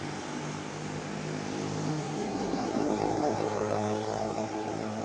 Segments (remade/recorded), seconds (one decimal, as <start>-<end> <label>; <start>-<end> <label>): 0.0-1.9 recorded; 1.9-5.0 remade